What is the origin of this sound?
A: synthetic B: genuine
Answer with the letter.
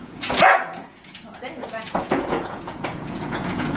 A